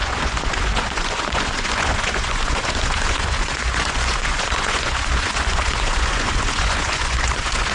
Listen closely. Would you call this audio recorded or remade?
remade